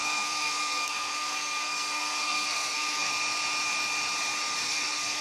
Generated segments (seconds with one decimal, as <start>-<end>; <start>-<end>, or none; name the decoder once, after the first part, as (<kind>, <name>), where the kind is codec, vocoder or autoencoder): 0.0-3.1 (codec, SNAC); 4.6-5.2